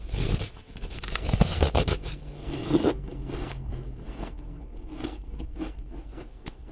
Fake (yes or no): yes